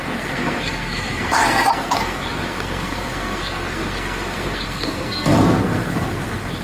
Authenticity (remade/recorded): remade